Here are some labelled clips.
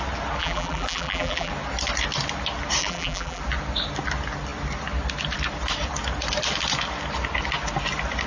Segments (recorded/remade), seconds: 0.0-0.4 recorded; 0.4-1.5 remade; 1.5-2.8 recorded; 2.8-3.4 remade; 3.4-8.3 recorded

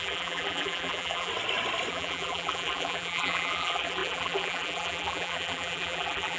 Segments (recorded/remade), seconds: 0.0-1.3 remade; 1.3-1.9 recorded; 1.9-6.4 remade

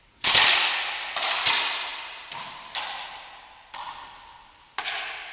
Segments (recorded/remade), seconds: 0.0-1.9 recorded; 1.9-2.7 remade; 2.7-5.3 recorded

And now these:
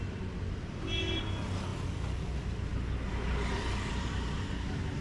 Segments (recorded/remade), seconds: 0.0-5.0 recorded